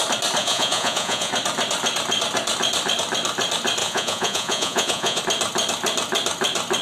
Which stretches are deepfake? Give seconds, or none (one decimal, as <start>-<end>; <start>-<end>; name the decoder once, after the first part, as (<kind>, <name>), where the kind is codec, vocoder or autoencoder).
0.4-1.3 (vocoder, Vocos); 3.8-5.2